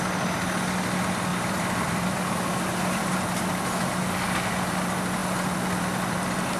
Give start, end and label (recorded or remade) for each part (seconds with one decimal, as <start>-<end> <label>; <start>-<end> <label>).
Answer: 0.0-1.3 recorded; 1.3-3.4 remade; 3.4-6.6 recorded